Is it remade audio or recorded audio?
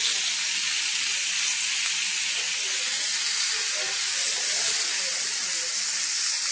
recorded